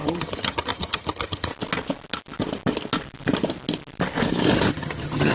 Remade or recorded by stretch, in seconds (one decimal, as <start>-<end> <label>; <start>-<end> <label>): 0.0-1.5 remade; 1.5-4.7 recorded; 4.7-5.3 remade